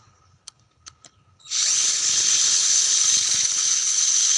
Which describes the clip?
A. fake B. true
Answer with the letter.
A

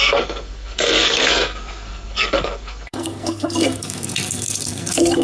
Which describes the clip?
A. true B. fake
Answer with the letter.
B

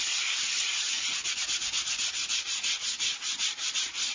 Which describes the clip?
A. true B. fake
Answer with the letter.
A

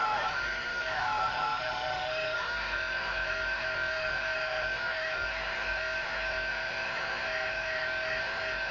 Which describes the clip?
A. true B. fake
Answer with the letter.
B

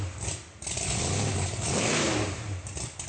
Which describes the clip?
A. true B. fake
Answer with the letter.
A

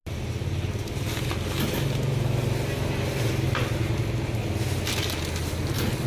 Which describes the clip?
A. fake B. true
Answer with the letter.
B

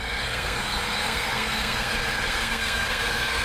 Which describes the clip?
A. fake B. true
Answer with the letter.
A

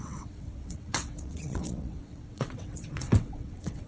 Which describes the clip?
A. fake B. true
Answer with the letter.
A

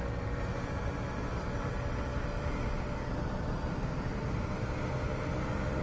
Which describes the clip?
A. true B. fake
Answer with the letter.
A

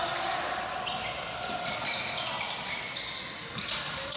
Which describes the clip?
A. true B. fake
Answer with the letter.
A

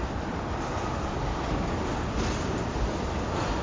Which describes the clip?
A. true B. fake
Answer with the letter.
A